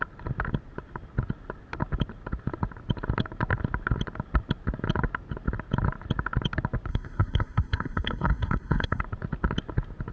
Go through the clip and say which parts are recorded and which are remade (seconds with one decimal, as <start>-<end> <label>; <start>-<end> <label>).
0.0-6.9 recorded; 6.9-9.0 remade; 9.0-10.1 recorded